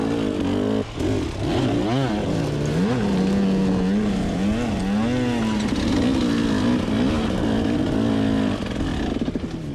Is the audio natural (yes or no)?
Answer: yes